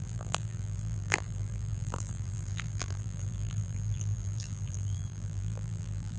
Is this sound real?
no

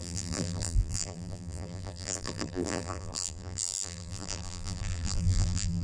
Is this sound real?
no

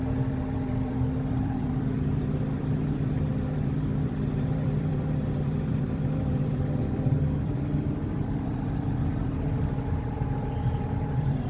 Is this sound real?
no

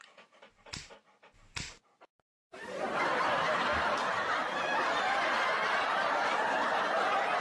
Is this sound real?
no